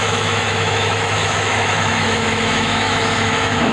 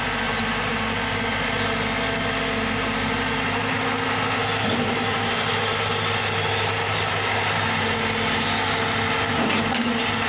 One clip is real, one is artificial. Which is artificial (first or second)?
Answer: first